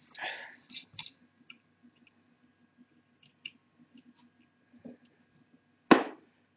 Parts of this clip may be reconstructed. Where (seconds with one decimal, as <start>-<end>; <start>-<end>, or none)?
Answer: 0.0-2.5

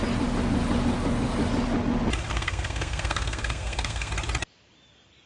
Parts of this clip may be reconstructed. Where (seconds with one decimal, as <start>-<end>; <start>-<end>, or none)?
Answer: 2.3-4.1

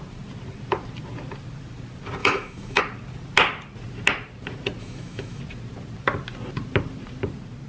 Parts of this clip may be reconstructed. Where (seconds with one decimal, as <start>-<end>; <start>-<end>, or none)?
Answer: 2.2-2.8; 4.8-5.4

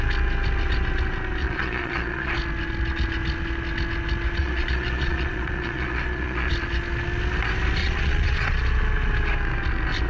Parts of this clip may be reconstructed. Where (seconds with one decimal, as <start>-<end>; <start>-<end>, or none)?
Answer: 1.4-2.3; 4.4-6.5; 7.8-8.6